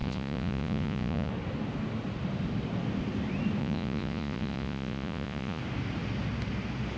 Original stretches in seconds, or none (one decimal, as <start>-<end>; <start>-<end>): 1.3-3.6; 5.6-7.0